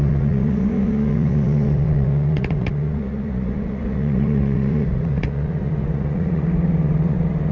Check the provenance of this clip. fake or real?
fake